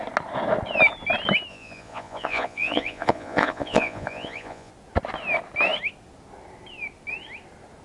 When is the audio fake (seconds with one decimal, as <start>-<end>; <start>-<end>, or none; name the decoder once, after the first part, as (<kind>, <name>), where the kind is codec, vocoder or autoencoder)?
1.5-4.7 (vocoder, Vocos)